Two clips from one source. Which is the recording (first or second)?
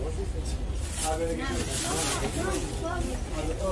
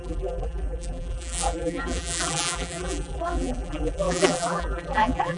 first